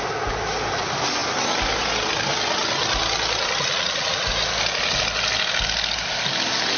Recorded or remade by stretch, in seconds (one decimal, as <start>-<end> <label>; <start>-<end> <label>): 0.0-6.8 recorded